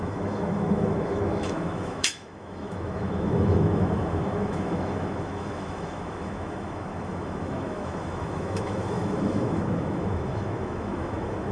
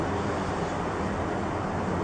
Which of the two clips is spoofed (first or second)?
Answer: first